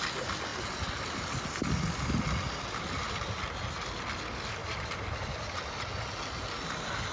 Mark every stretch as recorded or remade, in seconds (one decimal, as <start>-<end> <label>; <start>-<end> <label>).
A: 0.0-4.6 recorded; 4.6-5.6 remade; 5.6-7.1 recorded